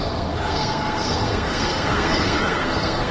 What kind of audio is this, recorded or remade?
remade